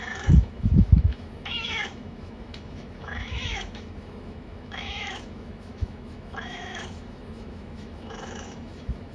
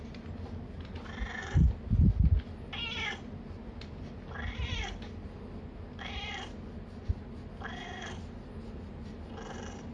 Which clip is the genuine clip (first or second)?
second